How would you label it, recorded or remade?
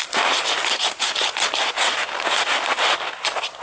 recorded